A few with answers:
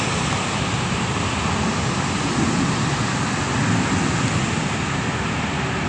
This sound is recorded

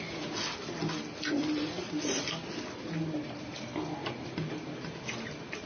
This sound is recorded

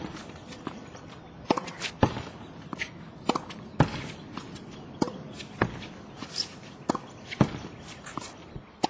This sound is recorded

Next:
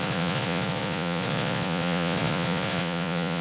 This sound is remade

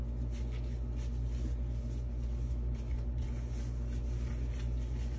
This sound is recorded